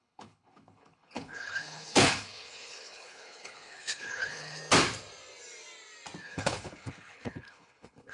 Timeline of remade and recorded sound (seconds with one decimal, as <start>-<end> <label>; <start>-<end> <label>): 0.0-4.6 remade; 4.6-6.2 recorded; 6.2-8.1 remade